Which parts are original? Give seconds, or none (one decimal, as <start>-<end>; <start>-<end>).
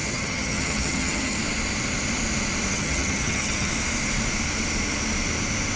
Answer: 1.4-2.7; 3.7-5.8